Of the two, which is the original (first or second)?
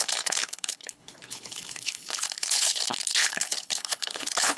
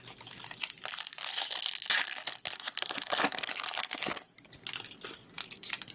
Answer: second